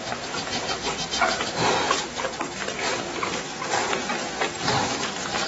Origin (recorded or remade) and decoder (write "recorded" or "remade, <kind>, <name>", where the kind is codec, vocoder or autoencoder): recorded